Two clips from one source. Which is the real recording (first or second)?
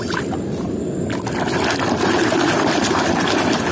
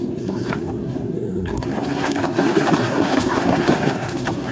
first